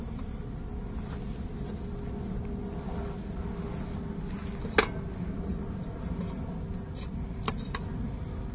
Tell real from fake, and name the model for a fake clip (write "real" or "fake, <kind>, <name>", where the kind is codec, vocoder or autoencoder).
real